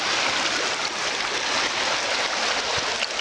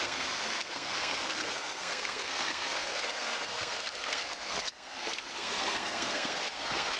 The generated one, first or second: second